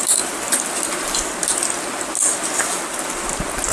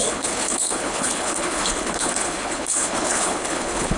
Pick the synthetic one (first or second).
second